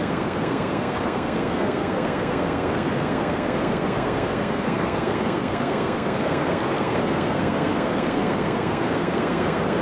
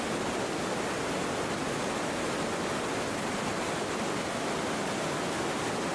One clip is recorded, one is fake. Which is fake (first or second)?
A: first